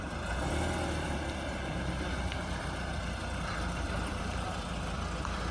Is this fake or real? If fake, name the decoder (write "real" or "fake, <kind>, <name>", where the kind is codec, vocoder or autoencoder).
fake, vocoder, BigVGAN v2